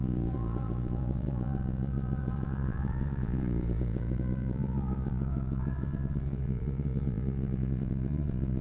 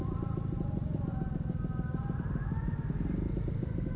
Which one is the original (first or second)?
second